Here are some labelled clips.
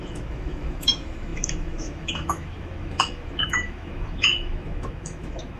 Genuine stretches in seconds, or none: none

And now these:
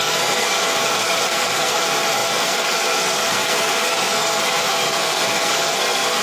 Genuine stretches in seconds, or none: none

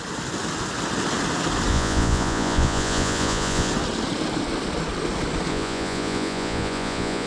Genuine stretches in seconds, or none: 0.0-1.7; 3.7-5.5

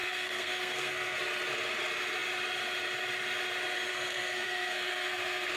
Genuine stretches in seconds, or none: 1.2-3.9